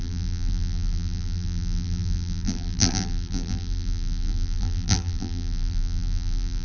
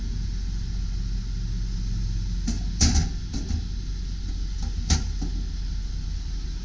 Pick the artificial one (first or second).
first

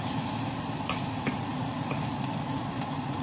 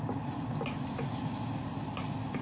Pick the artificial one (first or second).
first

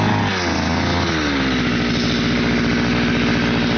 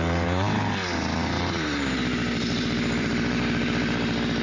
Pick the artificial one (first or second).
second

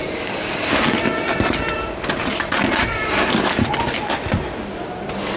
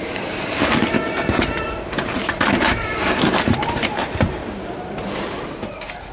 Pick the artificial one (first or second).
second